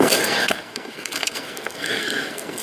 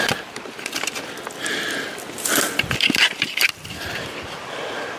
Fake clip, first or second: first